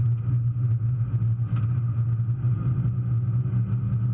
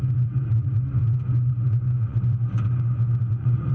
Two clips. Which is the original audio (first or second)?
first